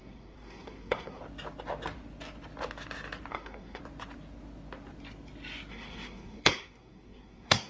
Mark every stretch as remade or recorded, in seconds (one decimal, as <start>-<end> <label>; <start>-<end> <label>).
0.0-1.2 remade; 1.2-3.3 recorded; 3.3-3.8 remade; 3.8-5.7 recorded; 5.7-7.7 remade